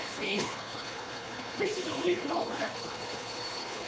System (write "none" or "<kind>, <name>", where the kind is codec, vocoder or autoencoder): codec, HILCodec